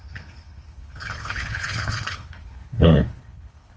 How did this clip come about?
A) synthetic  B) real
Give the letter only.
A